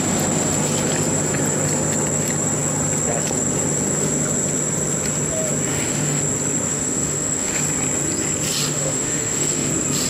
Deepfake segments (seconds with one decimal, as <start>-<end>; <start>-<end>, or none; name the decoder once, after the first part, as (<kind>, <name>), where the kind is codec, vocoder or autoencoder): 5.7-6.2 (autoencoder, DAC-VAE); 6.7-7.6; 8.7-9.7